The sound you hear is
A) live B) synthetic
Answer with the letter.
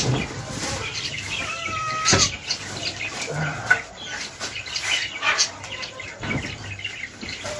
A